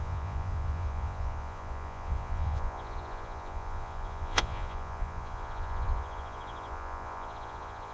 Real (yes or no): no